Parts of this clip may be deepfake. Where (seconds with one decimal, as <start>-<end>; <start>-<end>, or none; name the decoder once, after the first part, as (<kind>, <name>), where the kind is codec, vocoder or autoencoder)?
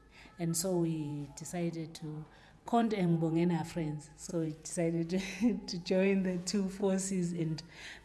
0.0-1.1 (vocoder, Vocos); 2.5-6.8; 7.4-8.0